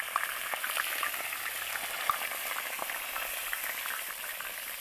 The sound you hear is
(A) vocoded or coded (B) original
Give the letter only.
B